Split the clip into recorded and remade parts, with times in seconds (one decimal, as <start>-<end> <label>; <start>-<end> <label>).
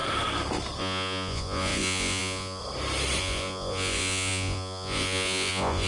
0.0-0.8 recorded; 0.8-2.6 remade; 2.6-3.2 recorded; 3.2-5.9 remade